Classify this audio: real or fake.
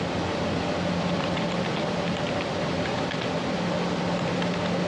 real